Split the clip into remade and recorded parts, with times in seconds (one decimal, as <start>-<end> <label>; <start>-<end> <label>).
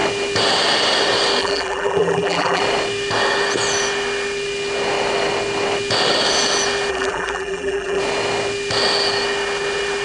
0.0-1.4 recorded; 1.4-2.6 remade; 2.6-6.9 recorded; 6.9-8.0 remade; 8.0-10.0 recorded